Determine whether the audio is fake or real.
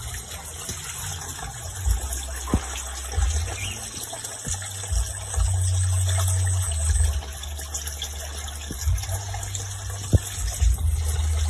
real